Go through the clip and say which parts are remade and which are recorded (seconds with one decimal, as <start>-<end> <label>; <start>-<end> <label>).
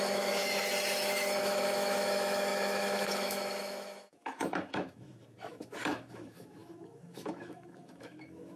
0.0-0.4 remade; 0.4-1.4 recorded; 1.4-8.6 remade